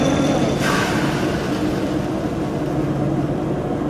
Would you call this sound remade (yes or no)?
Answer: no